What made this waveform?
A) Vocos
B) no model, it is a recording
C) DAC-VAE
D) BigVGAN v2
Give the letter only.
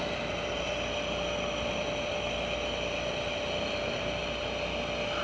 B